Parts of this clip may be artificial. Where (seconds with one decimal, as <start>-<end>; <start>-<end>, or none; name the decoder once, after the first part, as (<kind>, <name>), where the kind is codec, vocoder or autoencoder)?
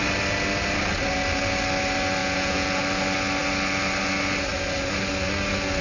2.2-2.8 (vocoder, Vocos)